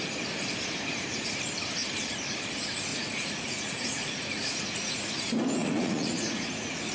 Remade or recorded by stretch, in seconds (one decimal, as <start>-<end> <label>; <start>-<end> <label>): 0.0-2.9 recorded; 2.9-5.1 remade; 5.1-5.6 recorded; 5.6-6.9 remade